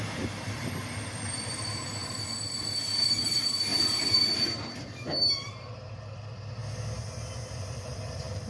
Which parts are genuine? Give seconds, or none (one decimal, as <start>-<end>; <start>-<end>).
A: 2.0-2.7; 6.6-7.6